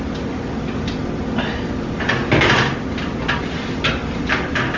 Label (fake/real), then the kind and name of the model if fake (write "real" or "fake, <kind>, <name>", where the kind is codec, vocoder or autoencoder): real